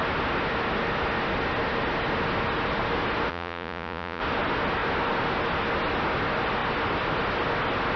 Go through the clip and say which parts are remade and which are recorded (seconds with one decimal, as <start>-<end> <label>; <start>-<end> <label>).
0.0-3.3 recorded; 3.3-4.2 remade; 4.2-8.0 recorded